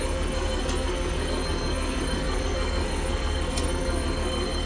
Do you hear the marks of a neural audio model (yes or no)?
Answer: yes